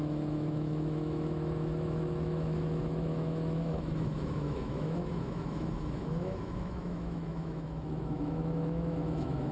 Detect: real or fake fake